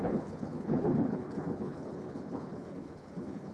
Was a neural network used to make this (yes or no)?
yes